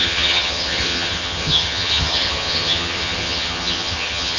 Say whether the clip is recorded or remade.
remade